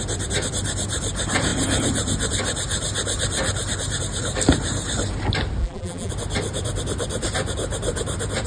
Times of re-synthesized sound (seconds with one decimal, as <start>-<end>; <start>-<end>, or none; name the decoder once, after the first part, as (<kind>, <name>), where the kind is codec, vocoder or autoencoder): 5.6-6.1 (vocoder, BigVGAN v2)